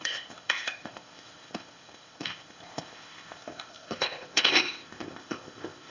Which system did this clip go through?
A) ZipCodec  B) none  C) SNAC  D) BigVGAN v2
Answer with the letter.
A